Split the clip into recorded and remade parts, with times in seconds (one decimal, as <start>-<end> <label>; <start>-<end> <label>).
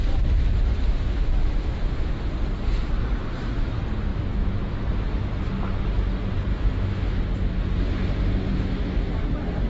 0.0-0.7 recorded; 0.7-2.0 remade; 2.0-4.1 recorded; 4.1-4.8 remade; 4.8-6.5 recorded; 6.5-7.2 remade; 7.2-9.7 recorded